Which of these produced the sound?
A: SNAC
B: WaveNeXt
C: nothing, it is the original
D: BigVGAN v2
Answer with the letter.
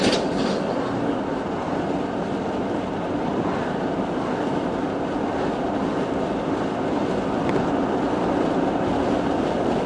C